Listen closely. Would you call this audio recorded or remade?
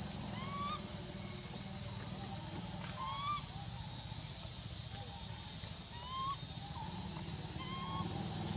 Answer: recorded